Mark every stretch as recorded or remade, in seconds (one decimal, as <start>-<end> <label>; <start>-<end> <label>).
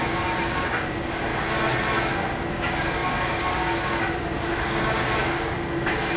0.0-1.3 remade; 1.3-2.5 recorded; 2.5-6.2 remade